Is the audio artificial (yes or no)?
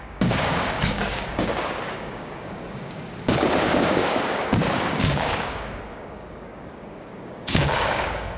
yes